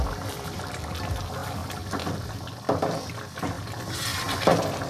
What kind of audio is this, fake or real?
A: fake